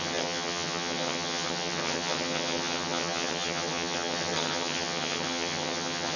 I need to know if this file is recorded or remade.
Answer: remade